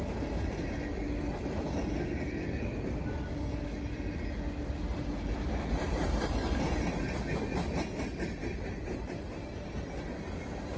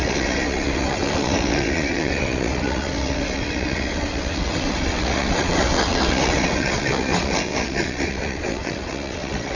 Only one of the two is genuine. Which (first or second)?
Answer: first